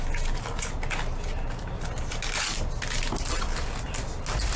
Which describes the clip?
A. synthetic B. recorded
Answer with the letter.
B